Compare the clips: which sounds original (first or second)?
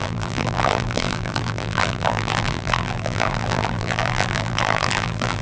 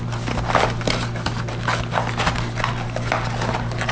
second